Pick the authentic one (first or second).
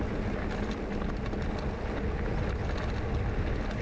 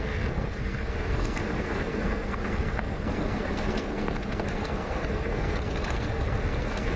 first